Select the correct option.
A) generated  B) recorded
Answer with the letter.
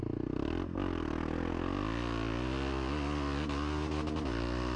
B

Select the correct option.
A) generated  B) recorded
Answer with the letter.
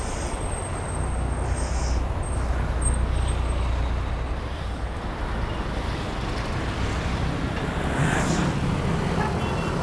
B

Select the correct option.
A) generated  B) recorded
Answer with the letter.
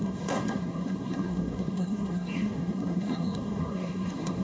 A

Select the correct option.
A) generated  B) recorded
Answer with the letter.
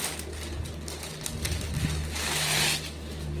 B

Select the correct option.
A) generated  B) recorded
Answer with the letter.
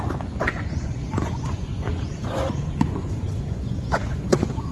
A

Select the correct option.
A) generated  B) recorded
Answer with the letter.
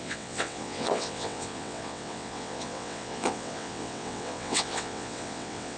A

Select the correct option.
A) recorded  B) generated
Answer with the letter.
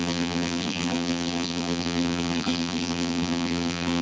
B